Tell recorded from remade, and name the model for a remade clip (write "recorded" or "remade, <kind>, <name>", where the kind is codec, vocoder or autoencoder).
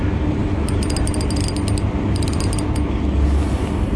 recorded